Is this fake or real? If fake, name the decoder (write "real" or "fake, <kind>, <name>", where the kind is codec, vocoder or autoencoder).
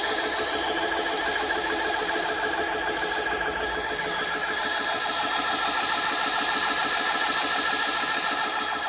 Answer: real